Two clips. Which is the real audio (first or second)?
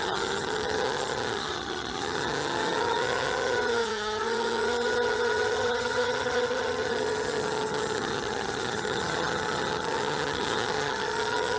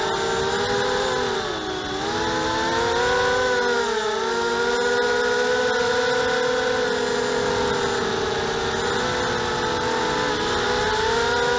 second